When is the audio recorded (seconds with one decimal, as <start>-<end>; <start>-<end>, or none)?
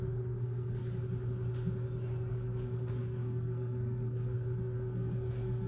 0.8-2.3